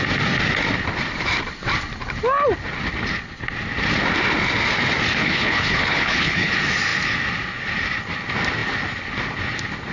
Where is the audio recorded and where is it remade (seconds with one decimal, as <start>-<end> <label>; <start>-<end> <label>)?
0.0-5.2 recorded; 5.2-6.5 remade; 6.5-9.9 recorded